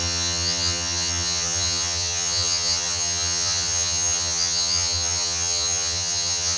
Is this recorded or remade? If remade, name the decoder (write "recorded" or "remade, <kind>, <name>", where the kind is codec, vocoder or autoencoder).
remade, vocoder, HiFi-GAN